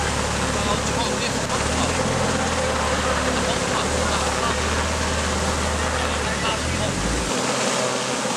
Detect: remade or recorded recorded